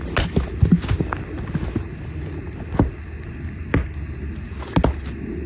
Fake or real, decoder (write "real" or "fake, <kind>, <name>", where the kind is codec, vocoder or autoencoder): real